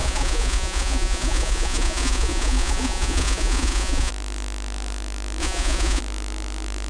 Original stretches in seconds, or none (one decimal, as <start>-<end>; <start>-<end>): 4.1-5.4; 6.0-6.9